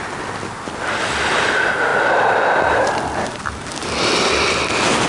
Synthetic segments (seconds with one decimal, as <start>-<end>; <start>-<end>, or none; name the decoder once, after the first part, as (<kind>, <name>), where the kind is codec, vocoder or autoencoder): none